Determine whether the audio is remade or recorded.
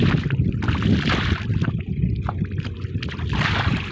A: recorded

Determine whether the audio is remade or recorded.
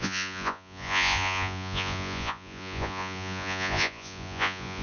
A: remade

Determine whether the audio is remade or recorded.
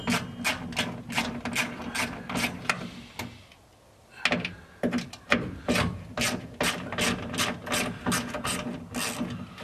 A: recorded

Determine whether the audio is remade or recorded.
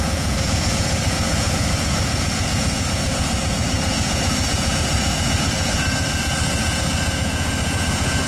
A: remade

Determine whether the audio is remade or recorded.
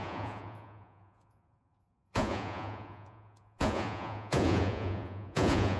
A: remade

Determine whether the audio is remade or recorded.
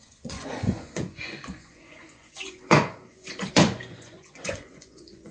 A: remade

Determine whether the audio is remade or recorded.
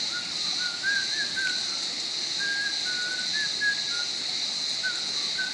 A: recorded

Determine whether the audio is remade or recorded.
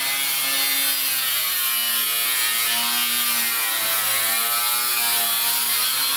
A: recorded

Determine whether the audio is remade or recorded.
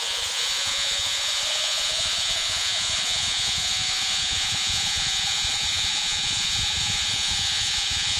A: remade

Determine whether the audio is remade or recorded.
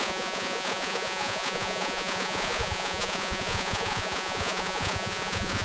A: remade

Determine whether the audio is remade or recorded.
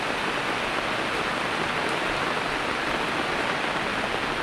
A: recorded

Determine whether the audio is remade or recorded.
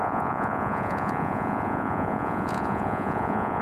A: remade